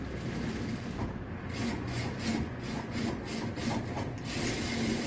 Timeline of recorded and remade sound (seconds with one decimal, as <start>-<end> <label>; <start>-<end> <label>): 0.0-1.6 recorded; 1.6-3.1 remade; 3.1-5.1 recorded